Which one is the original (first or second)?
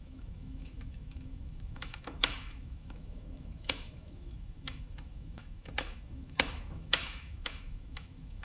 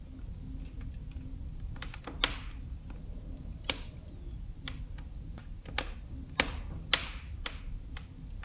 second